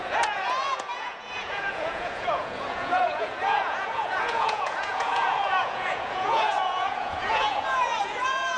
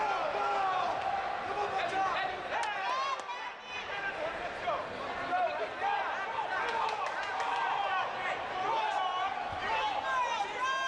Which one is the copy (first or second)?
first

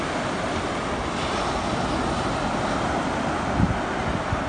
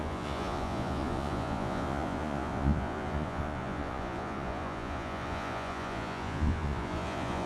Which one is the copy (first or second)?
second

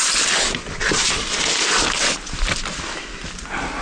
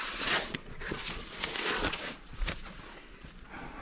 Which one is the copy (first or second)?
second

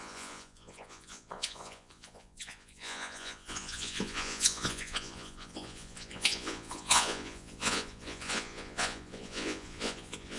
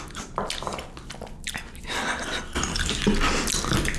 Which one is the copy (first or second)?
first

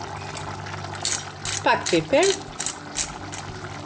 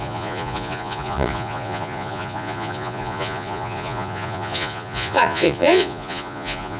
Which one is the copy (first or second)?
second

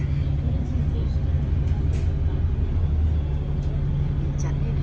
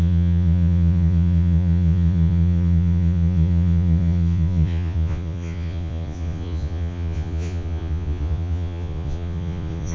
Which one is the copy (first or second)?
second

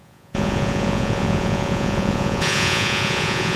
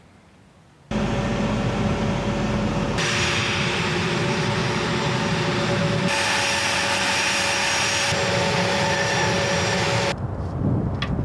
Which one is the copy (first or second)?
first